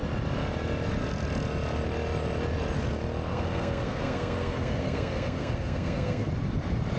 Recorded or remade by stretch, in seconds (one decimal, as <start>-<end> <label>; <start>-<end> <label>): 0.0-3.3 recorded; 3.3-6.3 remade; 6.3-7.0 recorded